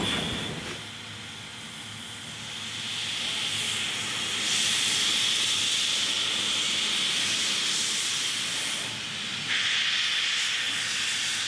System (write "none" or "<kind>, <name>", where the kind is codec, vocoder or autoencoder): none